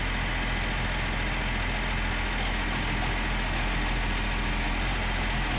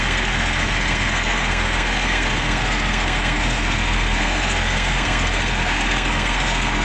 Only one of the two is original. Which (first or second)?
first